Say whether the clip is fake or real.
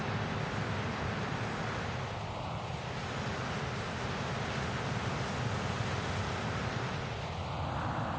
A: real